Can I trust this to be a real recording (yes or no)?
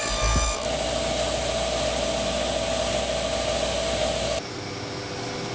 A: yes